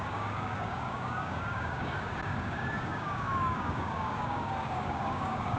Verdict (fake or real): fake